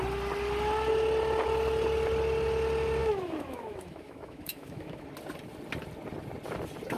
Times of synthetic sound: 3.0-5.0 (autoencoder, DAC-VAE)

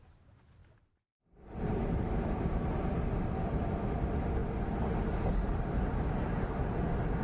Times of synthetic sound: 6.2-6.8 (vocoder, BigVGAN v2)

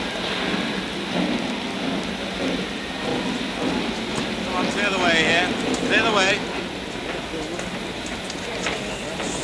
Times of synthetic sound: none

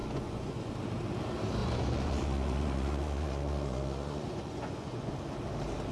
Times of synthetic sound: 0.0-0.7 (vocoder, Vocos); 1.6-5.1

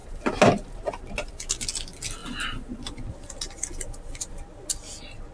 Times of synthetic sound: 0.0-1.3 (vocoder, BigVGAN v2)